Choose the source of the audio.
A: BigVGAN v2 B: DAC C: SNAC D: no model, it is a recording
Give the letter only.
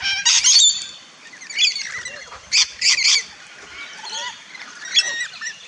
D